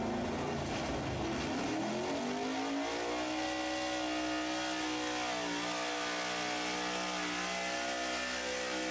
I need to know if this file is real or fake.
real